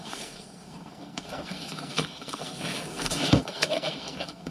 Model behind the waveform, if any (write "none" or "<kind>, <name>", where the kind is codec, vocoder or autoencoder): codec, SNAC